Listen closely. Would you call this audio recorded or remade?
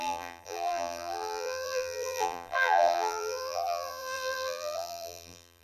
remade